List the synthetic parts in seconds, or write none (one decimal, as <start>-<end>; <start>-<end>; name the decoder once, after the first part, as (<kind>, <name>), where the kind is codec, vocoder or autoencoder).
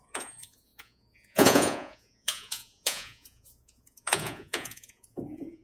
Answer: 0.0-5.6 (vocoder, Vocos)